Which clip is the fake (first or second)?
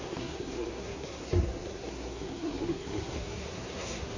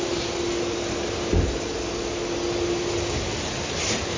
first